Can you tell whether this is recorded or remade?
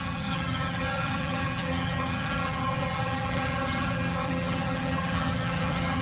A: remade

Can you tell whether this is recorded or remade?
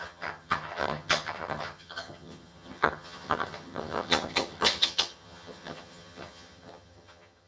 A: remade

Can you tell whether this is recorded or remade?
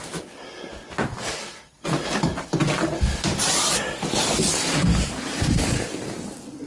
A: recorded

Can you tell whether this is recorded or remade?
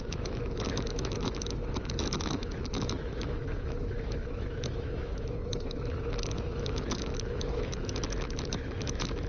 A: remade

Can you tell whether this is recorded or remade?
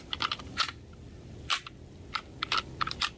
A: recorded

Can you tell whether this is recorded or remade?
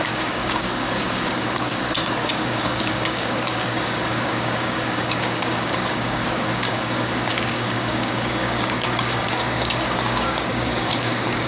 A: remade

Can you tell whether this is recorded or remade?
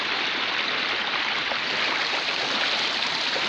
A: recorded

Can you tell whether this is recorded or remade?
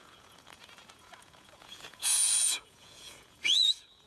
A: remade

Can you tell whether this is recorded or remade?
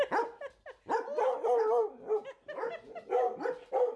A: recorded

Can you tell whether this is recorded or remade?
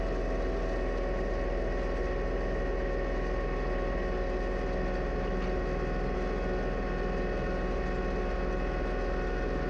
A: recorded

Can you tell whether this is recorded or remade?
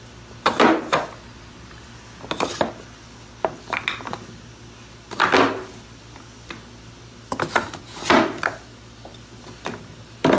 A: recorded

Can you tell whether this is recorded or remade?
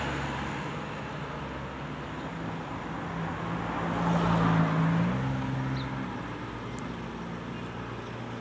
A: recorded